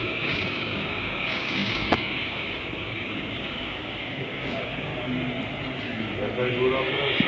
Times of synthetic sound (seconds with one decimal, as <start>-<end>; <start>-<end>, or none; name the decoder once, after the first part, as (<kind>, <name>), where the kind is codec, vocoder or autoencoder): 0.0-4.9 (codec, DAC)